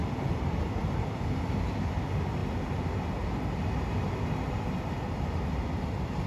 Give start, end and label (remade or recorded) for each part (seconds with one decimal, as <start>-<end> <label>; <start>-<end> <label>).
0.0-6.3 recorded